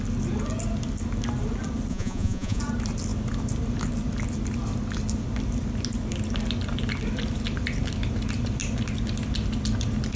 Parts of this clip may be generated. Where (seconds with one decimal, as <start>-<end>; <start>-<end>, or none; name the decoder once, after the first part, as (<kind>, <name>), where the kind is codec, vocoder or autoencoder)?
1.9-2.6 (vocoder, Vocos)

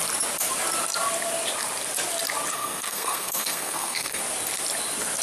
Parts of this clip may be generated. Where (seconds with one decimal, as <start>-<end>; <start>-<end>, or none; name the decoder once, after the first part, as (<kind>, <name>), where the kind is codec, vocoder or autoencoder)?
2.5-4.2 (codec, SNAC)

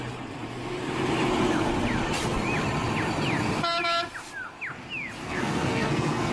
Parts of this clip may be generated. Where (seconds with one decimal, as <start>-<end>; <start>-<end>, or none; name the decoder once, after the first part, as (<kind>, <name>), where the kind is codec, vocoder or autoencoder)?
5.2-6.3 (codec, SNAC)

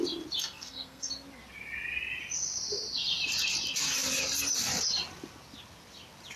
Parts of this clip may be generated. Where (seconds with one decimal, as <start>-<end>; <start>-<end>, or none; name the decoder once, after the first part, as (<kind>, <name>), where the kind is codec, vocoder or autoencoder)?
0.4-1.1 (codec, SNAC)

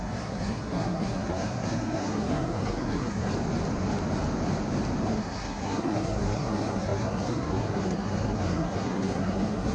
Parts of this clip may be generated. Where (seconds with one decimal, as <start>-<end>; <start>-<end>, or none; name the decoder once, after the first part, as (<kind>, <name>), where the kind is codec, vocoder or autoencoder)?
0.0-3.3 (codec, SNAC); 5.1-9.7

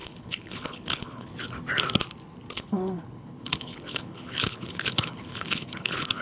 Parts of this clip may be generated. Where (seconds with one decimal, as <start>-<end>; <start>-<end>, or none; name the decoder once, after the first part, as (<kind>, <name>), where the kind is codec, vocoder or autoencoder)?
0.0-1.3 (codec, HILCodec); 2.5-6.2